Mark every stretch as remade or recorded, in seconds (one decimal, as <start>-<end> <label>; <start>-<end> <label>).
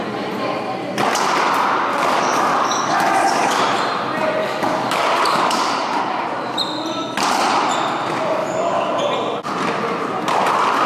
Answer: 0.0-1.9 recorded; 1.9-3.6 remade; 3.6-4.4 recorded; 4.4-6.0 remade; 6.0-8.4 recorded; 8.4-9.0 remade; 9.0-10.9 recorded